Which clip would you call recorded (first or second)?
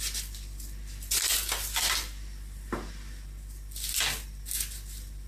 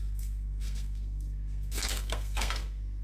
first